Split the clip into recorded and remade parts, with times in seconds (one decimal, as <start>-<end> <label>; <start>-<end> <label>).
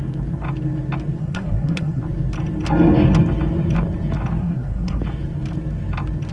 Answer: 0.0-1.2 recorded; 1.2-2.0 remade; 2.0-4.4 recorded; 4.4-5.0 remade; 5.0-6.3 recorded